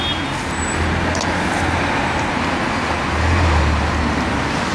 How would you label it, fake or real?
real